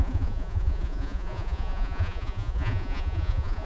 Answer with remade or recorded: remade